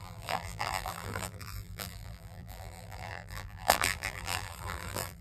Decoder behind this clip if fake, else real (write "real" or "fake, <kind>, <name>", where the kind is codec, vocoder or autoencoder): fake, vocoder, BigVGAN v2